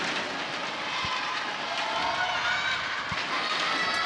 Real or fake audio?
real